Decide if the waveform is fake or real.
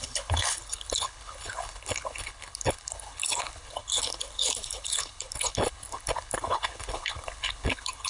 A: fake